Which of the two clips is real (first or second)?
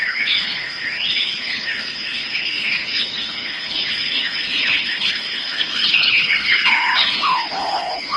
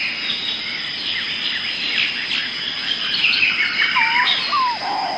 second